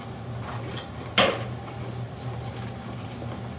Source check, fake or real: real